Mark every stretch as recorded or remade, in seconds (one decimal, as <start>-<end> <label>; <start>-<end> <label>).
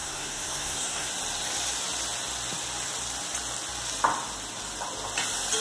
0.0-1.1 remade; 1.1-5.6 recorded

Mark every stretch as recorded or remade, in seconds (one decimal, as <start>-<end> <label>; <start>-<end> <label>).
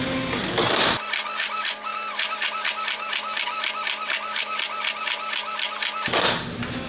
0.0-6.9 recorded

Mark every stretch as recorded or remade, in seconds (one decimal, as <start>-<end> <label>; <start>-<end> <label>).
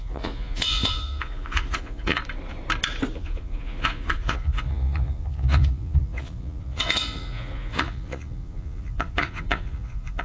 0.0-2.2 remade; 2.2-3.1 recorded; 3.1-10.2 remade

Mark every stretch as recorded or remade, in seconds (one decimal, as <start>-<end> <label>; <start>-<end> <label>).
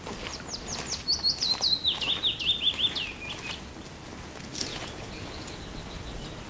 0.0-4.7 recorded; 4.7-5.6 remade; 5.6-6.5 recorded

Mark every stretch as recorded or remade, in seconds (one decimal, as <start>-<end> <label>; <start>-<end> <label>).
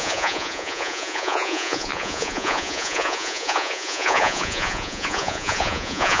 0.0-6.2 remade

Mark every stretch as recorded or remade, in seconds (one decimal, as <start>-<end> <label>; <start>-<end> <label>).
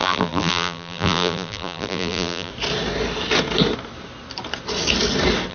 0.0-2.5 remade; 2.5-5.5 recorded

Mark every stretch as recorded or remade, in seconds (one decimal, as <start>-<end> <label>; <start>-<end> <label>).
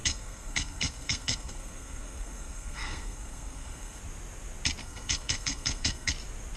0.0-4.0 remade; 4.0-4.8 recorded; 4.8-6.1 remade; 6.1-6.6 recorded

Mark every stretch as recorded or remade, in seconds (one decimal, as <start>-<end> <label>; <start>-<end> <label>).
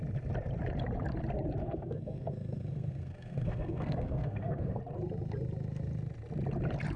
0.0-1.6 recorded; 1.6-4.8 remade; 4.8-7.0 recorded